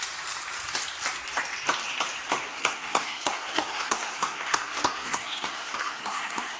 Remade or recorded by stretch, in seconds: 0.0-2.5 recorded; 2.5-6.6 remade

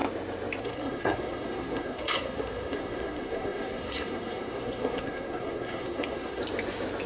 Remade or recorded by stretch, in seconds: 0.0-0.6 recorded; 0.6-6.4 remade; 6.4-7.1 recorded

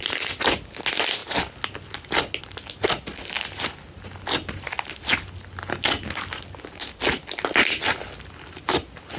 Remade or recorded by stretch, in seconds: 0.0-9.2 recorded

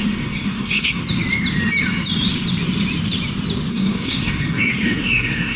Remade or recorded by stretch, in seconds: 0.0-1.0 remade; 1.0-3.7 recorded; 3.7-5.6 remade

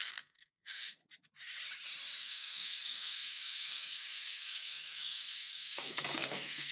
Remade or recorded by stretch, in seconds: 0.0-1.0 remade; 1.0-2.2 recorded; 2.2-6.7 remade

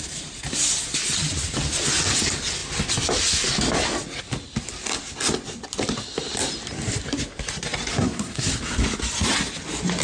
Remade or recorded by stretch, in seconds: 0.0-7.9 recorded; 7.9-8.5 remade; 8.5-10.0 recorded

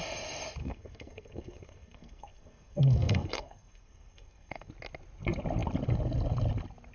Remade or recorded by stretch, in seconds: 0.0-0.6 recorded; 0.6-4.7 remade; 4.7-6.9 recorded

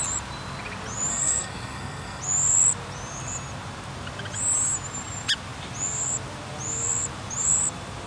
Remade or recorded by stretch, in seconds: 0.0-1.1 recorded; 1.1-2.2 remade; 2.2-8.1 recorded